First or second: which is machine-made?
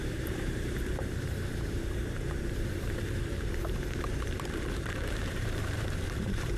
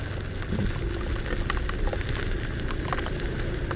first